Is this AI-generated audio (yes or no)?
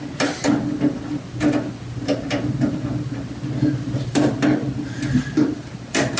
no